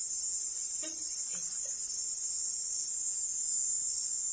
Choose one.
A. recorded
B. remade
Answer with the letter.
A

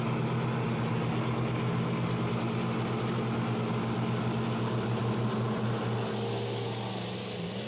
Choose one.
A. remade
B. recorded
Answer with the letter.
B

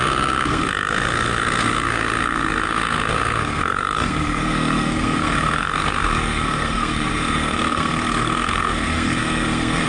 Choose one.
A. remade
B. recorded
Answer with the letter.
A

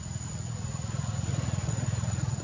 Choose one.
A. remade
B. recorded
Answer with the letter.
A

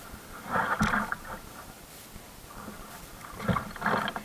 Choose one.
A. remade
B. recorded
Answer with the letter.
B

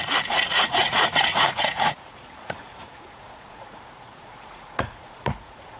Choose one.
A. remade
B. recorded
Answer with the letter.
A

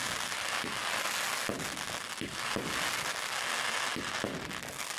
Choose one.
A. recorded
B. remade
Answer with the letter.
A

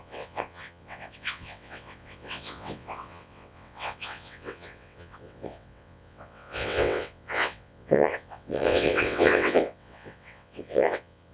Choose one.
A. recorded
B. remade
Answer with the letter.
B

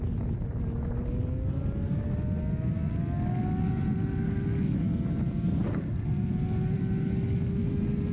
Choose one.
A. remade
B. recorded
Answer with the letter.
B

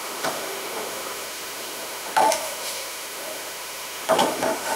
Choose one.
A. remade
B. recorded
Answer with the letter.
A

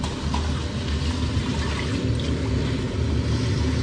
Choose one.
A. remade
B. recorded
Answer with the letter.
B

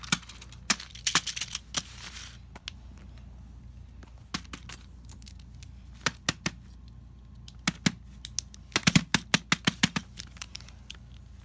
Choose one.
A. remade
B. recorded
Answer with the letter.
B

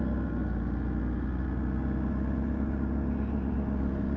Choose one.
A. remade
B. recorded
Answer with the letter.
B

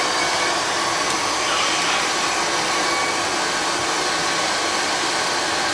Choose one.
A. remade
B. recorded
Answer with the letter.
B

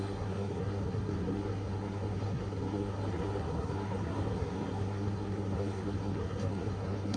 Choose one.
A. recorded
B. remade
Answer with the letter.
B